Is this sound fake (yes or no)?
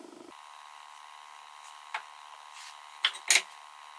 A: no